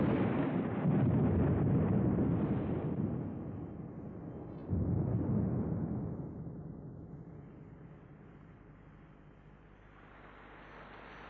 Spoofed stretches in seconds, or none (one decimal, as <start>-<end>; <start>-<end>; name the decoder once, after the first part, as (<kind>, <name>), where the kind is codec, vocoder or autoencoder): none